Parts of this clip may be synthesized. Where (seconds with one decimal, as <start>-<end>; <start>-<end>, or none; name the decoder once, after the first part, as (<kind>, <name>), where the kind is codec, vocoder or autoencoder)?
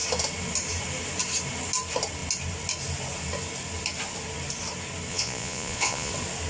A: 5.1-6.1 (vocoder, Vocos)